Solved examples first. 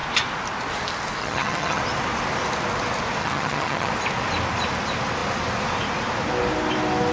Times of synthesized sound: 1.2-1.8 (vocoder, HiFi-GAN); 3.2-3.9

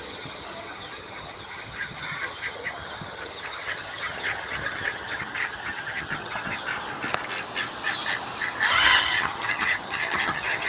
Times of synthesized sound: 0.0-6.7 (vocoder, HiFi-GAN); 8.7-10.7

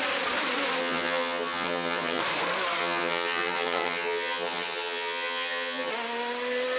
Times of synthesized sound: 0.8-2.2 (vocoder, HiFi-GAN); 2.8-5.9

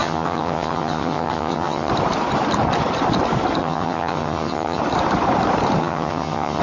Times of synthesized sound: 0.0-1.9 (vocoder, HiFi-GAN); 3.6-4.8; 5.8-6.6

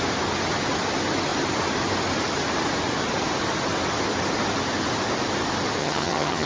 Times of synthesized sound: 5.8-6.5 (vocoder, HiFi-GAN)